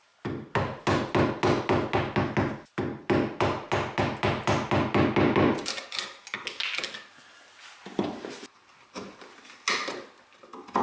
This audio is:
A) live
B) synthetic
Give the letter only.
A